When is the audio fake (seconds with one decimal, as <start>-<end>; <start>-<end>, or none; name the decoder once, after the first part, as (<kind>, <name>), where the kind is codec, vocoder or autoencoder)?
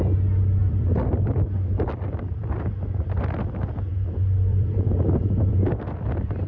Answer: 0.6-2.7 (vocoder, BigVGAN v2); 3.9-5.5